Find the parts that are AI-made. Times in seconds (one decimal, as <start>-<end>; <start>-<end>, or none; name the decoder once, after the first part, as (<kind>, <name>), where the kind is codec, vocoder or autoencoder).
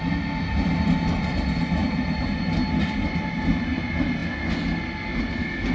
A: none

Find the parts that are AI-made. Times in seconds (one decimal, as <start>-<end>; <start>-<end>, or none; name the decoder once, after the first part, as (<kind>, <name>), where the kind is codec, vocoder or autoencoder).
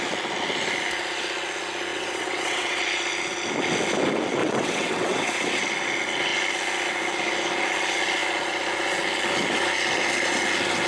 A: 1.9-2.8 (vocoder, WaveNeXt); 4.4-5.6